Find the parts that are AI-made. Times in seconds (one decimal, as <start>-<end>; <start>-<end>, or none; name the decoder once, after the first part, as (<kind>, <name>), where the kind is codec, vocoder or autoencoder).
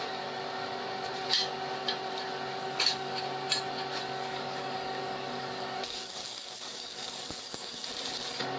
2.6-3.2 (codec, DAC); 4.0-7.9